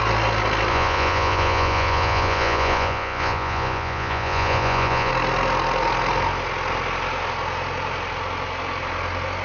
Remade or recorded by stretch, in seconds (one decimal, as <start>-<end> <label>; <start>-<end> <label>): 0.0-0.7 recorded; 0.7-5.1 remade; 5.1-9.4 recorded